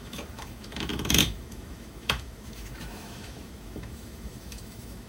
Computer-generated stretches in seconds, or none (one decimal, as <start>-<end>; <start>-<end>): 0.0-5.1